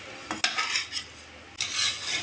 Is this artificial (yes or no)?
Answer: no